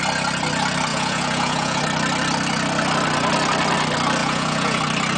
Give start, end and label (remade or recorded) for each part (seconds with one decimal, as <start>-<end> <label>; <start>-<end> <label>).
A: 0.0-0.9 recorded; 0.9-1.8 remade; 1.8-4.2 recorded; 4.2-4.8 remade; 4.8-5.2 recorded